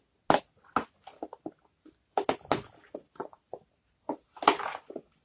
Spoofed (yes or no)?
no